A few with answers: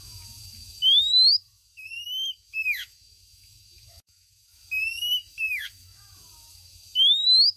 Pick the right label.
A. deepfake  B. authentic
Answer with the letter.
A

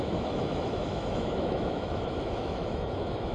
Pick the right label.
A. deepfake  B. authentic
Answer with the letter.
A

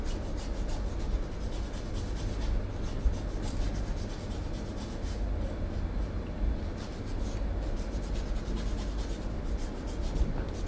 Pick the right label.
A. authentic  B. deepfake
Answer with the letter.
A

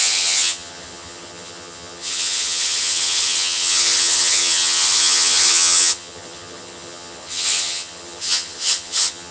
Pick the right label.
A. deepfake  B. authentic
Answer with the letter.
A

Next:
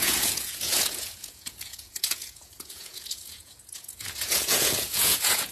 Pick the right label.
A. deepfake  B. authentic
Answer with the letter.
A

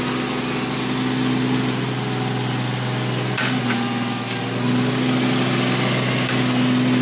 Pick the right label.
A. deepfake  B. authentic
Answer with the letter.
B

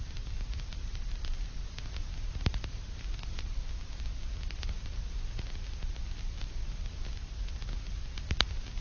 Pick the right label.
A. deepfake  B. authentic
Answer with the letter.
B